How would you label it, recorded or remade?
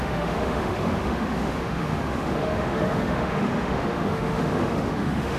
remade